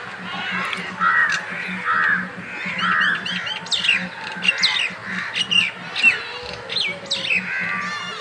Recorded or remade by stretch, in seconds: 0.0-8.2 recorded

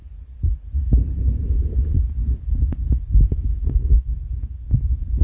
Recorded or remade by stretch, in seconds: 0.0-5.2 recorded

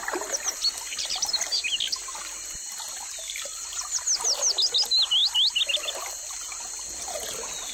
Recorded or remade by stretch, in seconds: 0.0-7.7 recorded

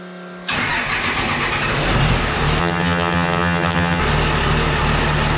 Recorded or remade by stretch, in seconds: 0.0-2.6 recorded; 2.6-4.0 remade; 4.0-5.4 recorded

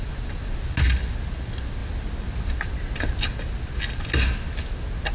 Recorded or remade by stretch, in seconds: 0.0-5.1 recorded